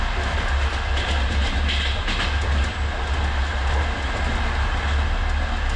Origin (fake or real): real